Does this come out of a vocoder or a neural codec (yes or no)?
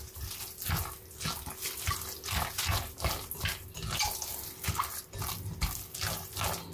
no